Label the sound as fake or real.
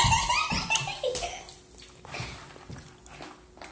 real